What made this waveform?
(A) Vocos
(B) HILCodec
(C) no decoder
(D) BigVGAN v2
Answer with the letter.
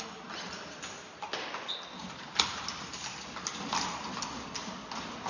C